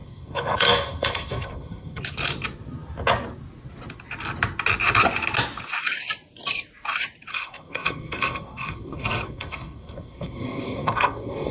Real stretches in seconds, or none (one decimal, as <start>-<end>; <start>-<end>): 2.0-7.3